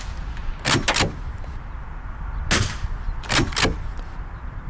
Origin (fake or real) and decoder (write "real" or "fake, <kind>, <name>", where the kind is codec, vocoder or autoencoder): real